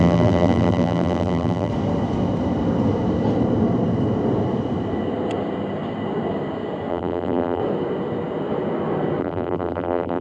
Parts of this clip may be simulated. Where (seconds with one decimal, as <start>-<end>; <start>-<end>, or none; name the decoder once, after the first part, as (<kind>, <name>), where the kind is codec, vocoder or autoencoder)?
0.0-1.7 (vocoder, BigVGAN v2); 6.9-7.6; 9.2-10.2